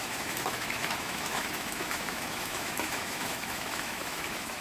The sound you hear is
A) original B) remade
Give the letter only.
B